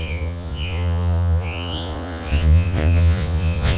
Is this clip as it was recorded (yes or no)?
no